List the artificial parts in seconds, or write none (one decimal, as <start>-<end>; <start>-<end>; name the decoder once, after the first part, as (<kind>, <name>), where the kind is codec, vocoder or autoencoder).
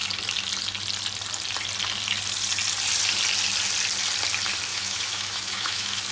4.7-6.1 (autoencoder, DAC-VAE)